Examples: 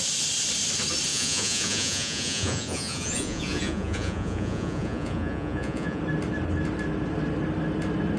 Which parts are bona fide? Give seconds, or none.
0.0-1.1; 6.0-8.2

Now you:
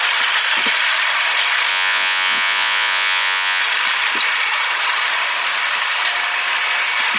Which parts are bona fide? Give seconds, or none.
0.0-1.7; 3.6-7.2

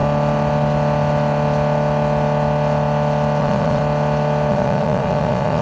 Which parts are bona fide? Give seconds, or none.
0.0-3.4; 3.8-4.5

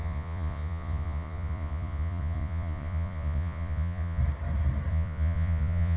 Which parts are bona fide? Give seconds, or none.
4.2-4.9

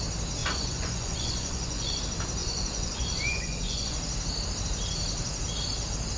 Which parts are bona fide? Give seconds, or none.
0.0-0.4; 2.0-2.4; 4.0-6.2